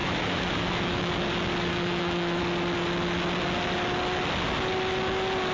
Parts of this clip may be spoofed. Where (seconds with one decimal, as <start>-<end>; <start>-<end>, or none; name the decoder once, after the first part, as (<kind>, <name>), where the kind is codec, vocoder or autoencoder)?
0.0-1.1 (autoencoder, DAC-VAE); 1.7-2.4